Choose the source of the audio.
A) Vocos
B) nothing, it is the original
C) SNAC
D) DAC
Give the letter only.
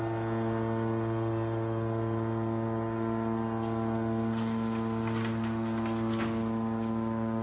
B